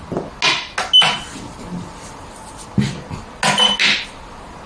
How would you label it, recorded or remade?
recorded